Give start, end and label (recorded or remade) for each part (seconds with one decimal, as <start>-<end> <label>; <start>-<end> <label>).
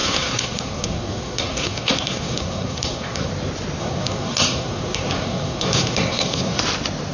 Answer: 0.0-3.3 remade; 3.3-3.8 recorded; 3.8-6.6 remade; 6.6-7.1 recorded